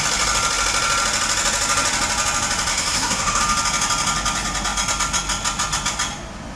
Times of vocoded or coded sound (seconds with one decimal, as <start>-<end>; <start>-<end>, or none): 2.7-3.4